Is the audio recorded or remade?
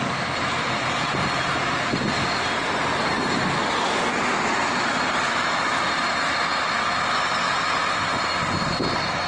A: recorded